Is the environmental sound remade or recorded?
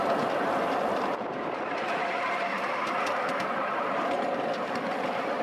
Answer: recorded